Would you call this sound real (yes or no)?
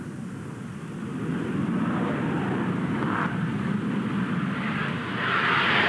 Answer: yes